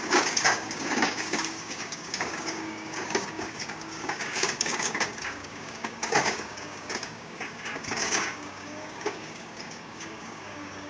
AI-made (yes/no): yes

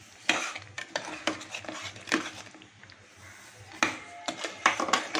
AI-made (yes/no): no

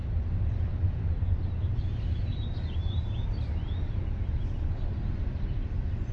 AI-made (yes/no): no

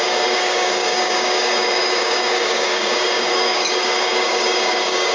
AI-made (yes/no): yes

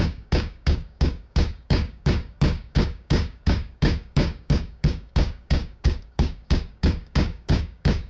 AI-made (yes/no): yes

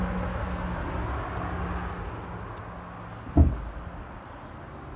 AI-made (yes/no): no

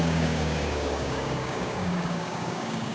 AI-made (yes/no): yes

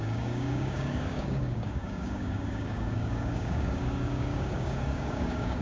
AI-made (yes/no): yes